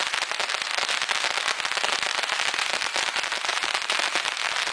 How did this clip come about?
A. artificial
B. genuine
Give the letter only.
B